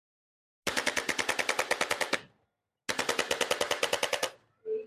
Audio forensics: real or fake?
real